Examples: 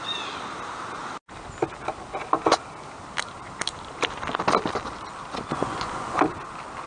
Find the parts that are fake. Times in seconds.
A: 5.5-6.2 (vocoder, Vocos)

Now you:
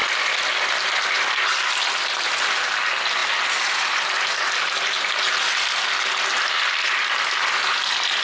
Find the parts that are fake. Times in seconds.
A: none

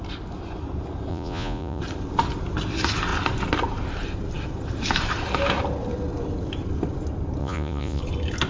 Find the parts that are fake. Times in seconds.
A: 1.1-1.8 (vocoder, Vocos); 7.4-8.0